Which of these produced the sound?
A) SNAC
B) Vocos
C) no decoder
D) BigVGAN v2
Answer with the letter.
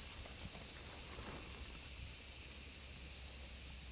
C